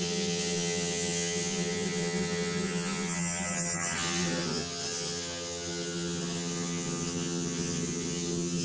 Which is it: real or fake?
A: fake